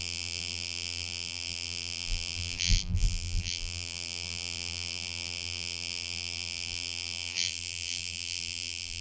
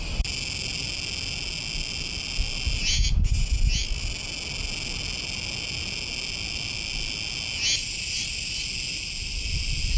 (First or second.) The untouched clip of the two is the second